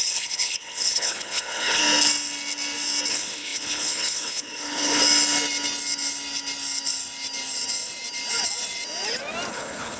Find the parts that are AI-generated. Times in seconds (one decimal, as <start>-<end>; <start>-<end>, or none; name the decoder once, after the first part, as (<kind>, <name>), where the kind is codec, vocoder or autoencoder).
0.0-1.8 (codec, HILCodec); 3.1-5.0; 9.5-10.0